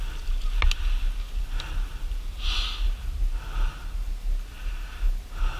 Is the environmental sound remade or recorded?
recorded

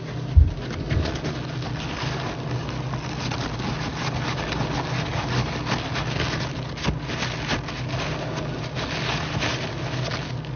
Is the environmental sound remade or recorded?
recorded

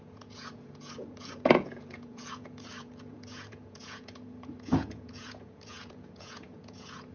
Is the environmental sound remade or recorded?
remade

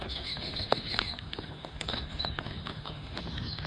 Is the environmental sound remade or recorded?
remade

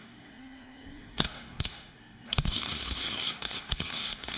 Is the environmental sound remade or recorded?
remade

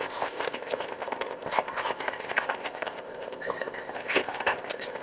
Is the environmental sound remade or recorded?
remade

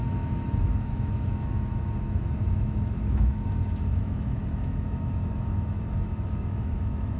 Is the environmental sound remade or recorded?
remade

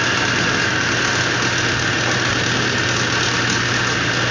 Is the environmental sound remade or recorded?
recorded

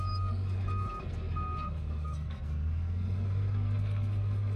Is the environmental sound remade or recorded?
remade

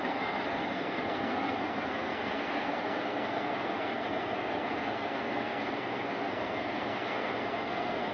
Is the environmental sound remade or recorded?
remade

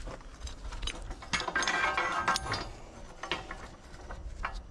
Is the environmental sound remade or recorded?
recorded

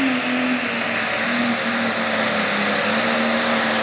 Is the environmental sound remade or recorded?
recorded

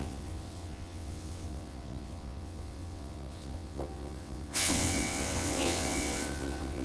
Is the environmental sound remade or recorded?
remade